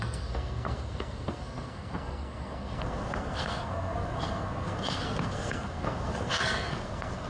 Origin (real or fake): fake